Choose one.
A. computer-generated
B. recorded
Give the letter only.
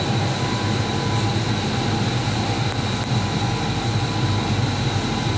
B